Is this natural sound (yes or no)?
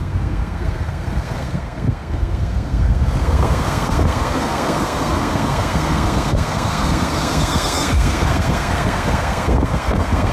no